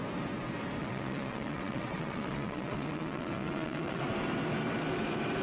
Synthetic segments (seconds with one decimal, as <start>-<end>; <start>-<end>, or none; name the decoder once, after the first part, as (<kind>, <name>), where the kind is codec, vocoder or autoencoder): 0.8-4.0 (vocoder, WaveNeXt)